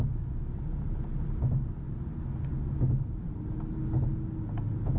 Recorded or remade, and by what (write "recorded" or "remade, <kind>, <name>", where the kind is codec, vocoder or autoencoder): recorded